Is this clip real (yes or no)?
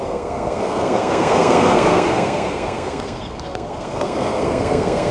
no